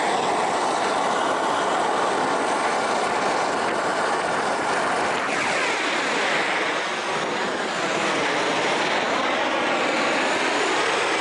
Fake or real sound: real